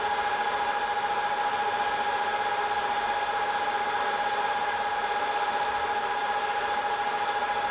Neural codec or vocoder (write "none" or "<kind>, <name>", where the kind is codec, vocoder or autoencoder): none